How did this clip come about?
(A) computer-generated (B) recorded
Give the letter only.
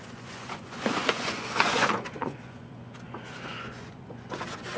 A